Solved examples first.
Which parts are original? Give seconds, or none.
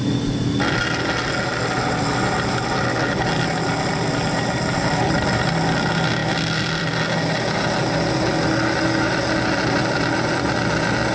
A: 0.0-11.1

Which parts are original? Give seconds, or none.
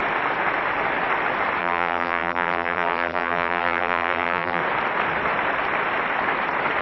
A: 0.0-1.6; 4.6-6.8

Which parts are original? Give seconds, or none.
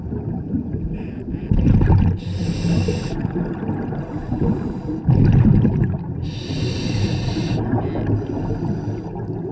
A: 0.0-9.5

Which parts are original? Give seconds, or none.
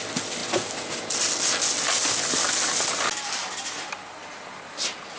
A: 0.0-5.2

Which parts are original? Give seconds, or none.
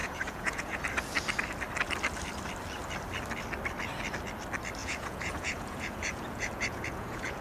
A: 0.8-4.8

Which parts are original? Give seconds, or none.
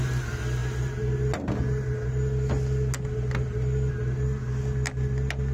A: 0.0-5.5